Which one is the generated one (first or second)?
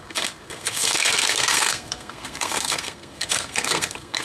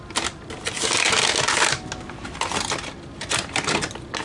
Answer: first